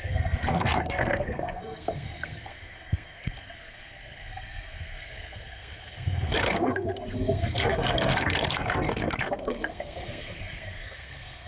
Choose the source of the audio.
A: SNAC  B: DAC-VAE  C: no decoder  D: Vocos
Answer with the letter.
A